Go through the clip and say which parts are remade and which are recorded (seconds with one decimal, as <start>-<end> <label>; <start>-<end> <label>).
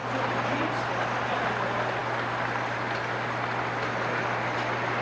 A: 0.0-5.0 recorded